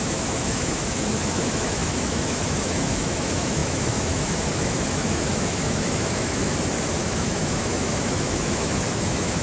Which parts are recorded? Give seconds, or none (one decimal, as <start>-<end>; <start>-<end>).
6.5-7.0

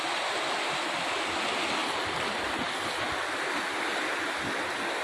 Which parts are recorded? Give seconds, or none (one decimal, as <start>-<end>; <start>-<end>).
0.0-5.0

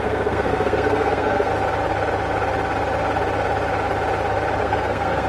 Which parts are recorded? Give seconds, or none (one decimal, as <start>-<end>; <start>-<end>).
1.5-4.6

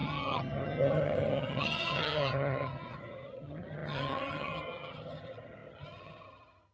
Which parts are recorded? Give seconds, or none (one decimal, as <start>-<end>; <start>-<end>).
none

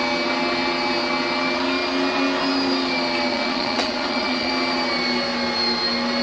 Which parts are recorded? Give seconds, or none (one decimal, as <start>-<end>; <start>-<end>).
0.0-3.3; 4.5-6.2